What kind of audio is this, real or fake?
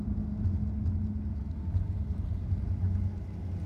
real